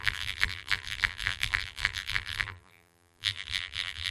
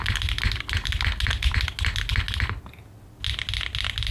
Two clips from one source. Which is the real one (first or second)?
second